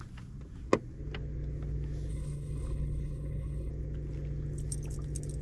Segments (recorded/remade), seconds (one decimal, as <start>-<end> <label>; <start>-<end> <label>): 0.0-2.1 recorded; 2.1-3.7 remade; 3.7-5.4 recorded